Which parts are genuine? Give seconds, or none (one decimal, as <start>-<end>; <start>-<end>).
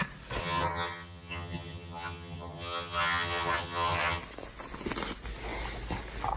0.0-0.4; 4.2-6.4